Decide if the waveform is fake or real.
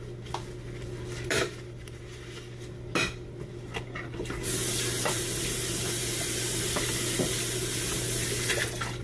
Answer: real